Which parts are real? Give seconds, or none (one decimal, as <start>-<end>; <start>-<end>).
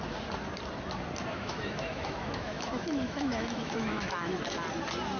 0.0-1.3; 4.4-5.2